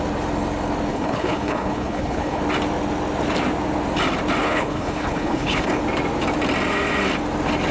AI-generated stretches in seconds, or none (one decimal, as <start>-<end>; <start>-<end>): 0.9-2.4; 4.4-5.8